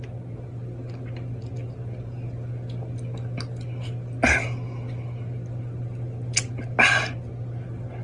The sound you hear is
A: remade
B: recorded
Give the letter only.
B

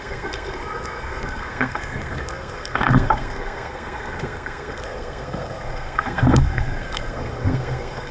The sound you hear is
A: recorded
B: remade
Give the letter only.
B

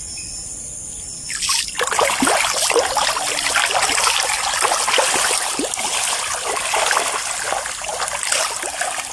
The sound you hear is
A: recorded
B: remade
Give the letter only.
A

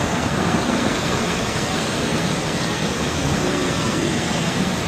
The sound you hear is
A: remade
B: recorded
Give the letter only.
A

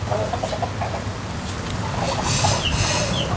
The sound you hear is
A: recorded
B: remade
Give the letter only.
A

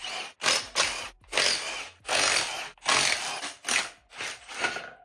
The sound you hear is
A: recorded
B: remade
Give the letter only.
A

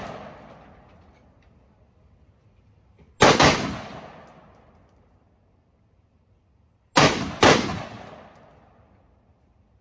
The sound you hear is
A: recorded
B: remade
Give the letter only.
A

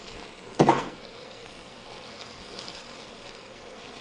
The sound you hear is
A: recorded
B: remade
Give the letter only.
B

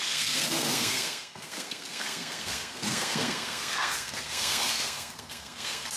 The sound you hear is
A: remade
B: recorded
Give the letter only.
A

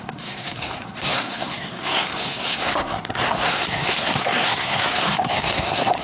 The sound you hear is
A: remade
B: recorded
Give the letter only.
A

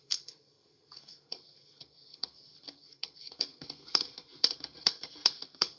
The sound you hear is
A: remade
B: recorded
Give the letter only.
A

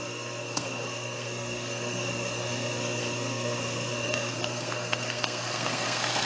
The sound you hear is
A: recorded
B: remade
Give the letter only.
B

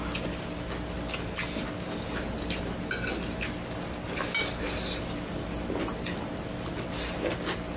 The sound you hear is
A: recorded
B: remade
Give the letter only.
A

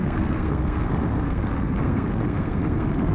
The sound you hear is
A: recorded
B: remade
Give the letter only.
B